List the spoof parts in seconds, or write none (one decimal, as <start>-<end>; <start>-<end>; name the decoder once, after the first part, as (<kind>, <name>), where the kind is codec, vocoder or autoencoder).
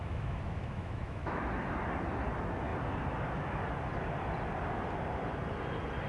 0.0-1.4 (autoencoder, DAC-VAE)